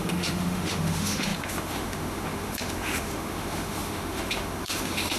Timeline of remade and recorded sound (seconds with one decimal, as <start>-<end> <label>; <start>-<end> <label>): 0.0-5.2 remade